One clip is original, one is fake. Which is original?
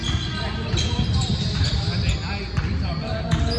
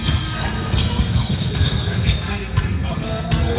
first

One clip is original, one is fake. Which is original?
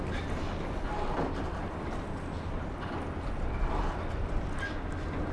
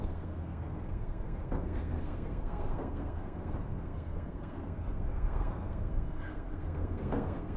first